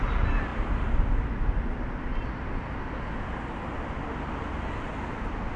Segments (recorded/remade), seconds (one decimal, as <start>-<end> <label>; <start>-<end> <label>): 0.0-5.6 recorded